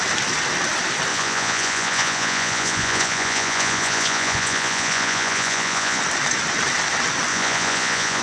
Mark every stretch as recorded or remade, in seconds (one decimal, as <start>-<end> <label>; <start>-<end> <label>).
0.0-1.1 recorded; 1.1-6.0 remade; 6.0-7.3 recorded; 7.3-8.2 remade